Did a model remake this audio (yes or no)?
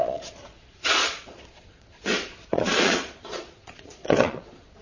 yes